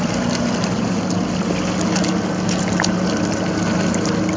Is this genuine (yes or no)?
yes